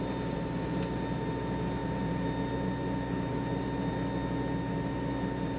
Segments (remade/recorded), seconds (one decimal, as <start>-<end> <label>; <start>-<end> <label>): 0.0-5.6 recorded